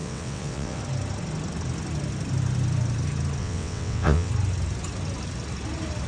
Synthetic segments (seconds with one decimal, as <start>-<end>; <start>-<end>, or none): 0.0-0.8; 3.4-4.3